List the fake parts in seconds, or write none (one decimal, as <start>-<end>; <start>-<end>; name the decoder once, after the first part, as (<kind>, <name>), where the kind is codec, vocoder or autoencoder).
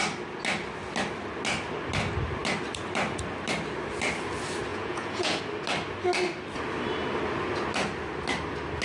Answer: 4.7-5.4 (vocoder, Vocos)